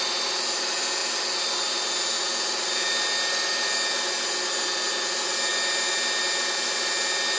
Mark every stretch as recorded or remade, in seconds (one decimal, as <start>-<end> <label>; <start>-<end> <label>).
0.0-7.4 recorded